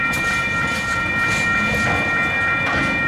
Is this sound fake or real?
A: real